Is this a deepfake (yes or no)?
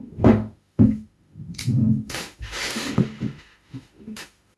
yes